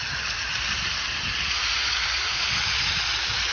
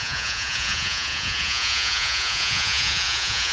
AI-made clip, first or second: second